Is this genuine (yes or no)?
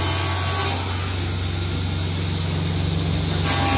yes